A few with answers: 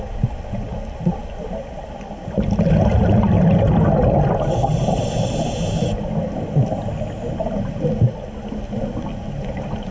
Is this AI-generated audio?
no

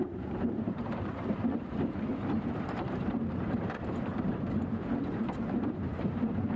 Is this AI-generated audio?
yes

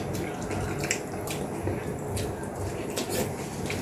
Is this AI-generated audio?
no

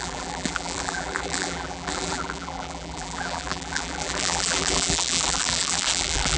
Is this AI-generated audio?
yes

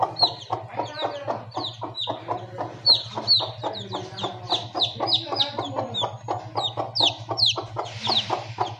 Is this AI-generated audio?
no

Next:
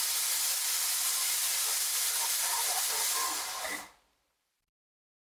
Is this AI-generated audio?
yes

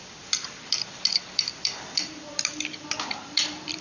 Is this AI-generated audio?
yes